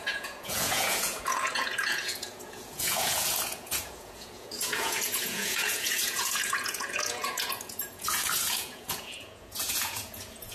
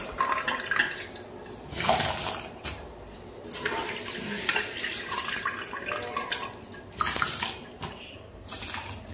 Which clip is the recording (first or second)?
second